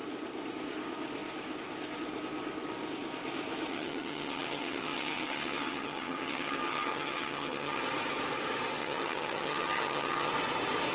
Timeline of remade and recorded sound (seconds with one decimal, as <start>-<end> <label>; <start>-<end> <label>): 0.0-3.7 recorded; 3.7-7.8 remade; 7.8-8.8 recorded; 8.8-10.3 remade; 10.3-10.9 recorded